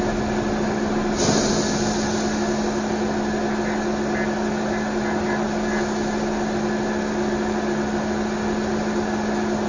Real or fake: real